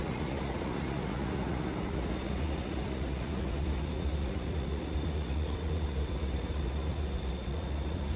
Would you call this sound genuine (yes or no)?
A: no